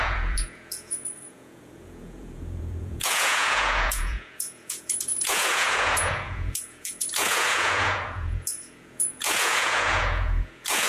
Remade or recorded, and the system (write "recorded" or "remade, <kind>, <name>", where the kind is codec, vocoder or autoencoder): remade, vocoder, Vocos